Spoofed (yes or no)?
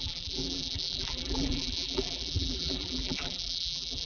yes